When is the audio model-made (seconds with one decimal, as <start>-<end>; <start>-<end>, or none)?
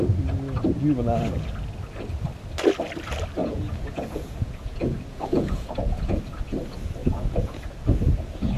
3.4-6.2; 7.0-7.6